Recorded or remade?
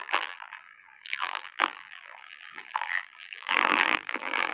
remade